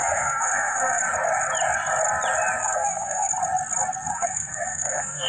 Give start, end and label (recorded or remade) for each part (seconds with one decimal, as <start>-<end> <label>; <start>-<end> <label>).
0.0-1.0 remade; 1.0-2.6 recorded; 2.6-3.3 remade; 3.3-4.1 recorded; 4.1-5.3 remade